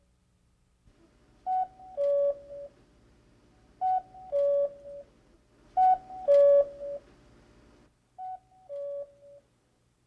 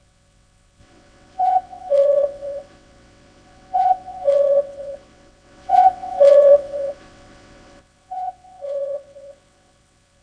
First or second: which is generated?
second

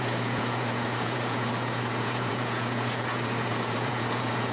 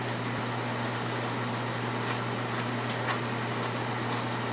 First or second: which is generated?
first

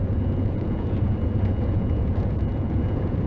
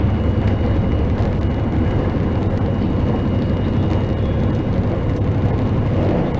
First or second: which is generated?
first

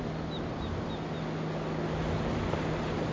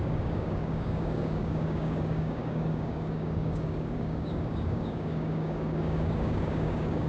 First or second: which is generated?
second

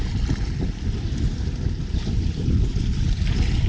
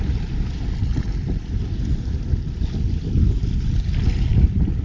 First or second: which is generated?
first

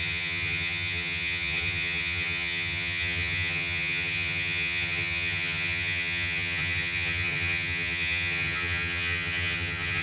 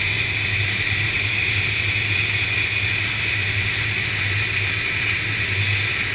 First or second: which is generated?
first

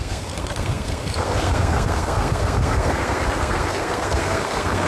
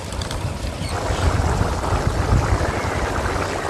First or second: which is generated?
first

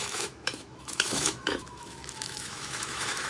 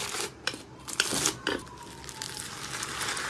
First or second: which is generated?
first